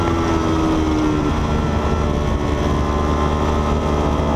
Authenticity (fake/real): real